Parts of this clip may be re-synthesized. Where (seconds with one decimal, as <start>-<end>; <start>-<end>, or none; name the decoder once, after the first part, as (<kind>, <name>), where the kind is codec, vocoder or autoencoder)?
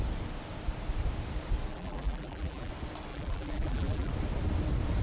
1.7-2.7 (vocoder, BigVGAN v2); 3.1-4.1